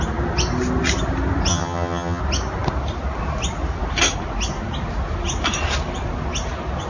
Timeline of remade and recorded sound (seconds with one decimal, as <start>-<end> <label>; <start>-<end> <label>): 0.0-1.5 recorded; 1.5-2.2 remade; 2.2-6.9 recorded